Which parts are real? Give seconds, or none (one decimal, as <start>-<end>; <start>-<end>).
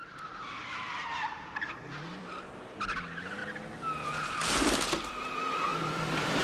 1.1-1.6; 3.4-5.1